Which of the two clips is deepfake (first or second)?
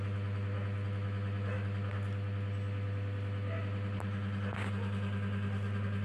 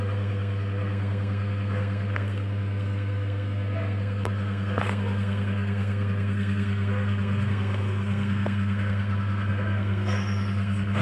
second